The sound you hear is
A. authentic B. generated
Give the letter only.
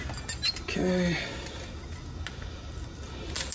A